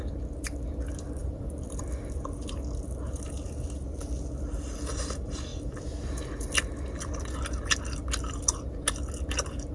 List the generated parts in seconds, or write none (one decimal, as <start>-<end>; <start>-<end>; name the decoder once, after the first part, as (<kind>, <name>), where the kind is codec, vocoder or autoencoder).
1.2-1.8 (vocoder, BigVGAN v2)